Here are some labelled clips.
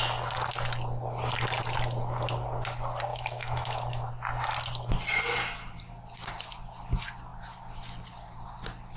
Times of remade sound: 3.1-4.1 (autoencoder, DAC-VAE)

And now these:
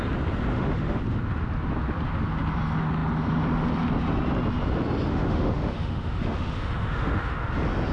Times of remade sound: 0.5-1.0 (autoencoder, DAC-VAE); 5.1-7.5

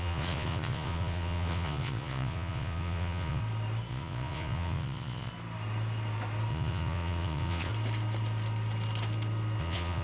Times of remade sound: 0.0-3.4 (vocoder, Vocos); 3.9-5.3; 6.5-7.7; 9.6-10.0

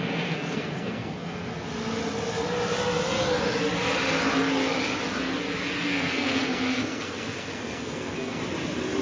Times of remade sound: 0.0-1.4 (codec, SNAC); 5.8-8.4

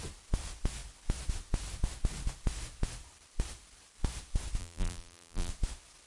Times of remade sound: 4.6-5.5 (vocoder, BigVGAN v2)

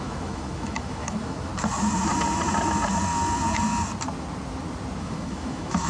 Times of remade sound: 0.0-1.5 (autoencoder, DAC-VAE); 5.0-5.9